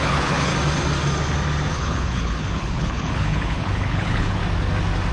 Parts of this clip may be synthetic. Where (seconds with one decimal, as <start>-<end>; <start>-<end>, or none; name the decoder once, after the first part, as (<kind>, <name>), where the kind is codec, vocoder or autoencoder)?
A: 0.0-0.5 (codec, HILCodec); 1.7-4.4